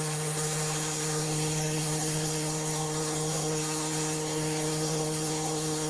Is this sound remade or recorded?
remade